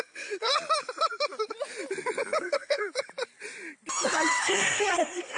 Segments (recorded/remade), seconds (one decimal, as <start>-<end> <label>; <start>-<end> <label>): 0.0-0.5 remade; 0.5-2.4 recorded; 2.4-2.8 remade; 2.8-4.4 recorded; 4.4-5.4 remade